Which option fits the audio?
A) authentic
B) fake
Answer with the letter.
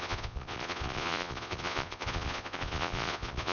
B